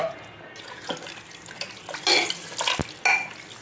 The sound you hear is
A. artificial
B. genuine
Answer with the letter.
B